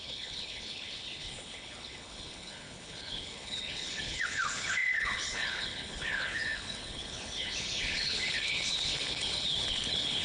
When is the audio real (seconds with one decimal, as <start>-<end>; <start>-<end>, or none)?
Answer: none